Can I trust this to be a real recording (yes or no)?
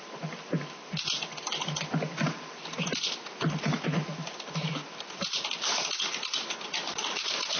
yes